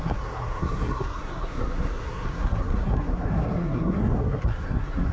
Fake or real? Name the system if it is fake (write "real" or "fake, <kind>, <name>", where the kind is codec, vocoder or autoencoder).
fake, codec, SNAC